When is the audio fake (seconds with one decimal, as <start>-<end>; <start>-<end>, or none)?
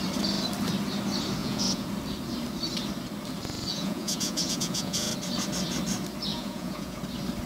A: 1.4-1.9; 3.7-5.1; 6.3-7.0